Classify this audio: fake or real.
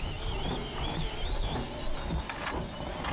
real